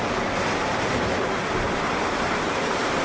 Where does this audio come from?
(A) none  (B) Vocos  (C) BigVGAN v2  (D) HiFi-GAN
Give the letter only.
C